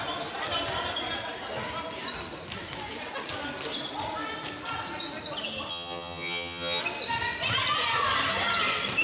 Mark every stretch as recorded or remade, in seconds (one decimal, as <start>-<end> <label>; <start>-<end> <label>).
0.0-5.7 recorded; 5.7-6.8 remade; 6.8-9.0 recorded